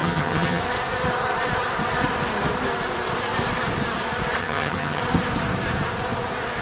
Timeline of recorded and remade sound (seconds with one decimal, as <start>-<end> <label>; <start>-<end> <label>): 0.0-0.6 remade; 0.6-4.4 recorded; 4.4-5.0 remade; 5.0-6.6 recorded